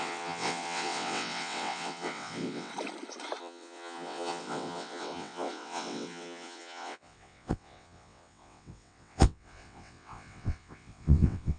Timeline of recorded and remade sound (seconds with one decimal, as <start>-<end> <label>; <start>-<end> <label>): 0.0-2.7 remade; 2.7-3.4 recorded; 3.4-11.6 remade